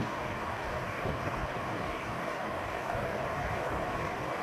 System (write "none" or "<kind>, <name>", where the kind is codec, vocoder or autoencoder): codec, DAC